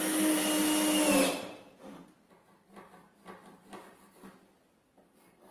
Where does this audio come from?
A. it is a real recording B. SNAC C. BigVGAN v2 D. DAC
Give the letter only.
A